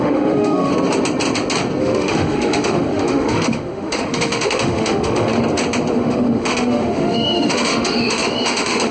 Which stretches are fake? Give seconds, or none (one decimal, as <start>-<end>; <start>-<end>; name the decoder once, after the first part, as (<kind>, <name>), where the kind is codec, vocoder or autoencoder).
0.0-0.7 (autoencoder, DAC-VAE); 1.8-5.3; 5.9-8.9